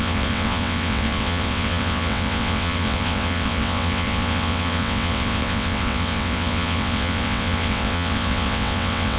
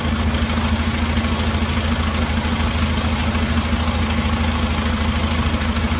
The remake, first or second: first